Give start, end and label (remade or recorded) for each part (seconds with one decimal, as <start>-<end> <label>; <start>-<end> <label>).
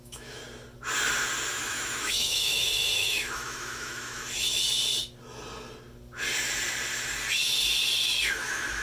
0.0-0.4 remade; 0.4-1.5 recorded; 1.5-4.2 remade; 4.2-8.3 recorded; 8.3-8.8 remade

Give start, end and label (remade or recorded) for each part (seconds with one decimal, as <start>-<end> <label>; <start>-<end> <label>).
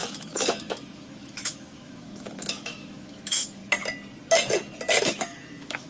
0.0-3.6 remade; 3.6-5.0 recorded; 5.0-5.9 remade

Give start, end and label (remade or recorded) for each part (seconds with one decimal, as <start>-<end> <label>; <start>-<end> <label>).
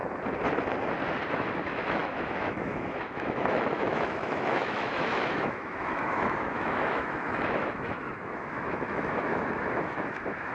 0.0-1.3 recorded; 1.3-10.5 remade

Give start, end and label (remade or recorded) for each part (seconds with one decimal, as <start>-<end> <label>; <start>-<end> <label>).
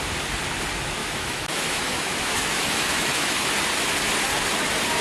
0.0-1.0 recorded; 1.0-3.5 remade; 3.5-5.0 recorded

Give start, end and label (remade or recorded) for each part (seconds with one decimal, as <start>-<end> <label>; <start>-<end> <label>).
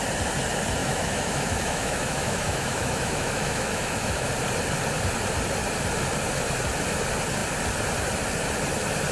0.0-0.8 recorded; 0.8-4.3 remade; 4.3-9.1 recorded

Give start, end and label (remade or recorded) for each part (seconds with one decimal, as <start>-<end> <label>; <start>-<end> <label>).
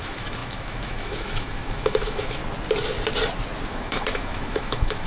0.0-2.4 remade; 2.4-3.7 recorded; 3.7-5.1 remade